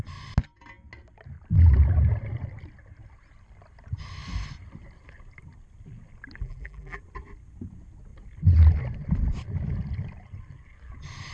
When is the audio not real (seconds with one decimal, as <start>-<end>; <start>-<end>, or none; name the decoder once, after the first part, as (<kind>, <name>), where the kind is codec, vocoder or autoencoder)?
6.4-7.0 (vocoder, BigVGAN v2)